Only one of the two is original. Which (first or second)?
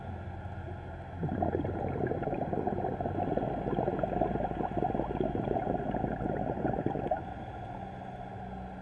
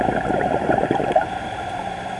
first